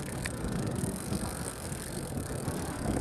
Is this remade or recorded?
remade